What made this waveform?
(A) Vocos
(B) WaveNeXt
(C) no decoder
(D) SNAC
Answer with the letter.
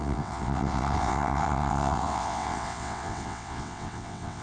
B